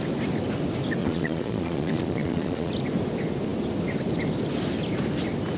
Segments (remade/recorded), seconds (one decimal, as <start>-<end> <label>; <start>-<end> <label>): 0.0-1.0 recorded; 1.0-2.7 remade; 2.7-5.6 recorded